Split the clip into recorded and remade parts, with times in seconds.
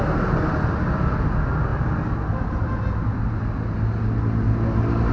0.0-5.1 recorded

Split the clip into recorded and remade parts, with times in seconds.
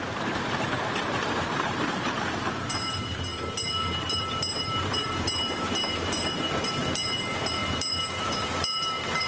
0.0-3.3 remade; 3.3-4.2 recorded; 4.2-9.3 remade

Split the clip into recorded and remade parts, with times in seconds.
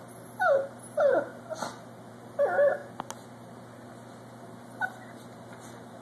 0.0-6.0 recorded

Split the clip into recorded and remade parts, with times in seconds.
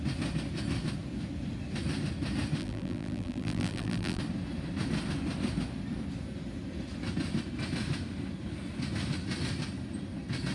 0.0-2.6 recorded; 2.6-4.2 remade; 4.2-10.5 recorded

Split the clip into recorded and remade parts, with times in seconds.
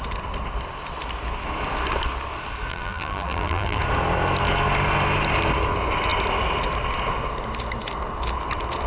0.0-2.7 recorded; 2.7-3.8 remade; 3.8-8.9 recorded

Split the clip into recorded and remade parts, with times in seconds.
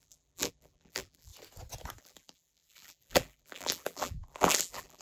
0.0-1.3 remade; 1.3-2.0 recorded; 2.0-5.0 remade